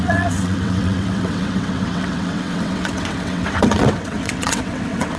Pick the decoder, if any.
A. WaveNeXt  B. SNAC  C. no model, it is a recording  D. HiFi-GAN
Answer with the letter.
A